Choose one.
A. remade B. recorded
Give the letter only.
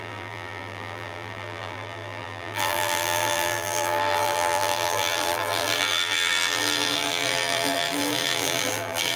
A